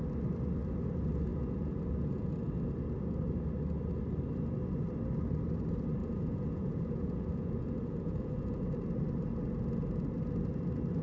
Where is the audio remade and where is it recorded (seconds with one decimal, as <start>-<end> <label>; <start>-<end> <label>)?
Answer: 0.0-1.3 recorded; 1.3-2.3 remade; 2.3-6.0 recorded; 6.0-8.5 remade; 8.5-11.0 recorded